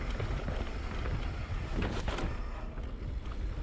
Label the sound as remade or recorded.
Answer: recorded